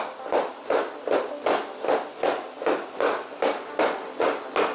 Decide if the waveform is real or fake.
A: real